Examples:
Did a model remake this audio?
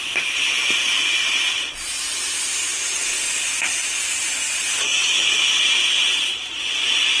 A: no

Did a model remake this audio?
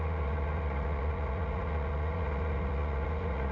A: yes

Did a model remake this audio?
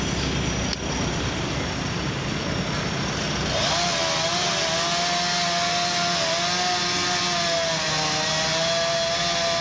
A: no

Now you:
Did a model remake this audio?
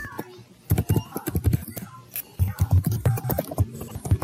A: no